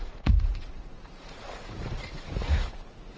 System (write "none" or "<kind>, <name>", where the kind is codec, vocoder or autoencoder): vocoder, Vocos